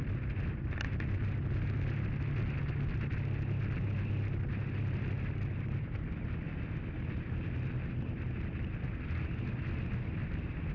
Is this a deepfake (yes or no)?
no